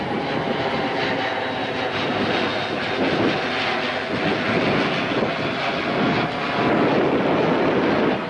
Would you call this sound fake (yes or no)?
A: no